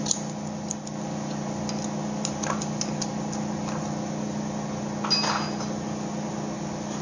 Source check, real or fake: real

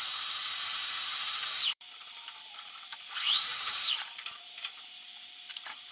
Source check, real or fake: fake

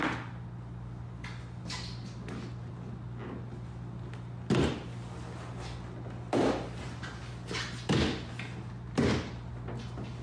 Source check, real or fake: real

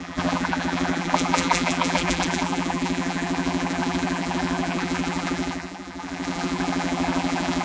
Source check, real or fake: fake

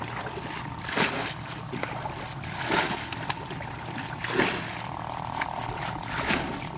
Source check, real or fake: fake